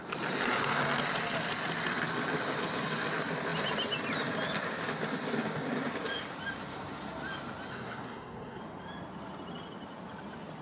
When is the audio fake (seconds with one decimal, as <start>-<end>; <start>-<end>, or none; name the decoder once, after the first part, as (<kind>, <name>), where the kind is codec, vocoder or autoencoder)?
7.7-8.6 (codec, SNAC)